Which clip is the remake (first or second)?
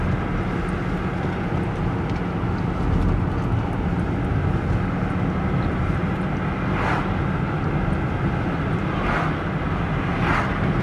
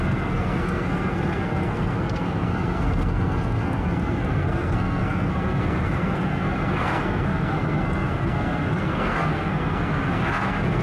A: second